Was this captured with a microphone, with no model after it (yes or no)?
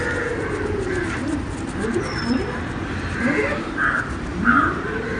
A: yes